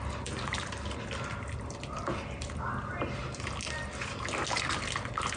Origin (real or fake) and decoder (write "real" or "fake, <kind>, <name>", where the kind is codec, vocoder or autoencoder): real